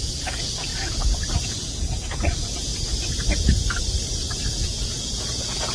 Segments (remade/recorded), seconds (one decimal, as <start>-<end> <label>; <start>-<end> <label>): 0.0-2.7 remade; 2.7-4.5 recorded; 4.5-5.7 remade